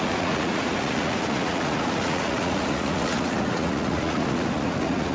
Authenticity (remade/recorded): remade